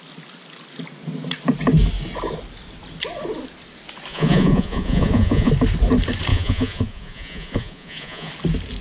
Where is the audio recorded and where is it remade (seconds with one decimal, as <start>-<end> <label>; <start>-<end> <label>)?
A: 0.0-4.1 recorded; 4.1-5.5 remade; 5.5-6.3 recorded; 6.3-8.3 remade; 8.3-8.8 recorded